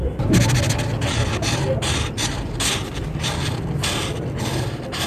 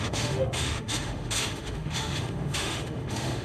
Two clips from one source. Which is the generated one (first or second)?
second